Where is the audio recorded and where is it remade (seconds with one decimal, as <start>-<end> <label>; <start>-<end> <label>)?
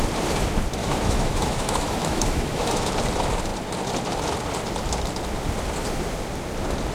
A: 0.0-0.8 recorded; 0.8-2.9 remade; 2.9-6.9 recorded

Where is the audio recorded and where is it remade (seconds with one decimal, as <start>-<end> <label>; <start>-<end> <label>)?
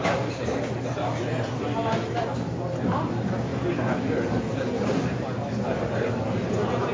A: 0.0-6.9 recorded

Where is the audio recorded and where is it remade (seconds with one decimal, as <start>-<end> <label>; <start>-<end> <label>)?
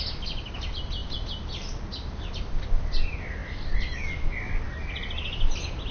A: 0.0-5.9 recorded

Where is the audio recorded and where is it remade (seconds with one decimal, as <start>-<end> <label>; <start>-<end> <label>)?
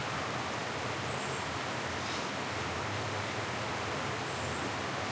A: 0.0-5.1 recorded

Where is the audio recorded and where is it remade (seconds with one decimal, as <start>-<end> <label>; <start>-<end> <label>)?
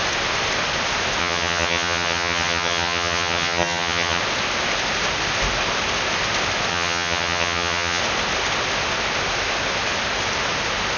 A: 0.0-1.2 recorded; 1.2-4.2 remade; 4.2-6.7 recorded; 6.7-8.0 remade; 8.0-11.0 recorded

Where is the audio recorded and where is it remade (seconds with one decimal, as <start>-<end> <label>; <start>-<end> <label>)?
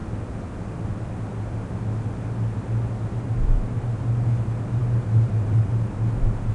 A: 0.0-4.8 recorded; 4.8-5.9 remade; 5.9-6.5 recorded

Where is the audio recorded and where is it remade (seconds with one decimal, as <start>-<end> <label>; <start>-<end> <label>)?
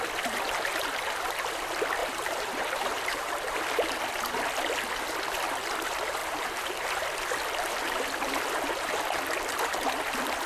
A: 0.0-2.0 recorded; 2.0-3.6 remade; 3.6-6.2 recorded; 6.2-7.0 remade; 7.0-10.5 recorded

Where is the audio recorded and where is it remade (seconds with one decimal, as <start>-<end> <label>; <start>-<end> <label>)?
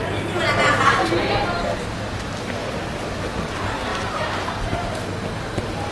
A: 0.0-3.9 recorded; 3.9-5.4 remade; 5.4-5.9 recorded